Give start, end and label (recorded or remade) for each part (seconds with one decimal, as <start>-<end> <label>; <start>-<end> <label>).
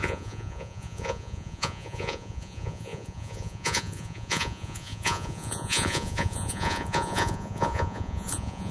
0.0-8.7 remade